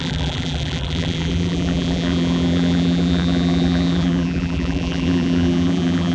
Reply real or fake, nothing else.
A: fake